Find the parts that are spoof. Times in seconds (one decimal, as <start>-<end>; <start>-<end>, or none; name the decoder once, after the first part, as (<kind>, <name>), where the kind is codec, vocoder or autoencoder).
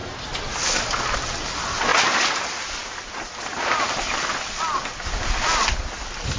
none